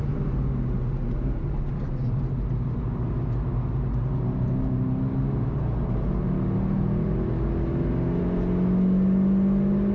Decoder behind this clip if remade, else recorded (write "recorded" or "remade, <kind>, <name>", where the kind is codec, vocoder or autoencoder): recorded